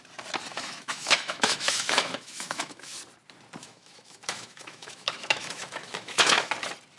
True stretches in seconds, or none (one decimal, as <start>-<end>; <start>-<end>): 0.0-0.5; 3.0-3.6; 6.5-7.0